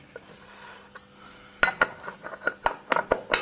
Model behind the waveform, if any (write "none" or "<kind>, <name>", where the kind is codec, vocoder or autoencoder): none